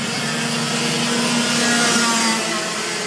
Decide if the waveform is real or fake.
real